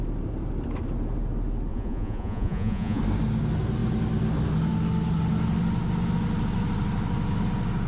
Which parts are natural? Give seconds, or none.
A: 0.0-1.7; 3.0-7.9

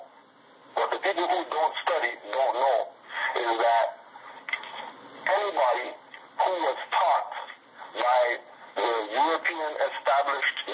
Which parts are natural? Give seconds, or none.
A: 0.0-10.7

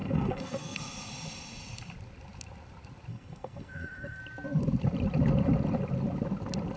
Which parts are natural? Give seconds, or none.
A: 0.8-3.1; 4.2-6.8